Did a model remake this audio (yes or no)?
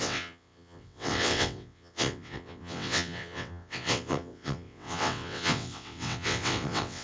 yes